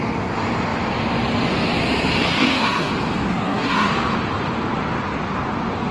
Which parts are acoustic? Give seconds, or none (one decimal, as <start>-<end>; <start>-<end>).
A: 0.0-2.3; 2.9-3.3; 3.9-5.9